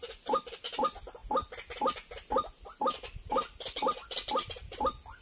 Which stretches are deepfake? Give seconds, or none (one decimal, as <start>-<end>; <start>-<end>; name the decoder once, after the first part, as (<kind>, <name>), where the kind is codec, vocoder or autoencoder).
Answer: none